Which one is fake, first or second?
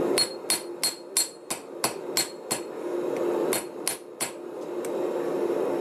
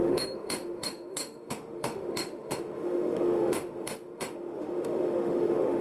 second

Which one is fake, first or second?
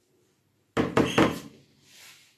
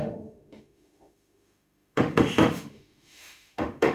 second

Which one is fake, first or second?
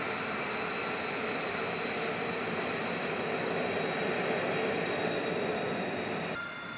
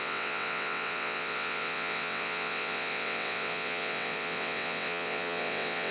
second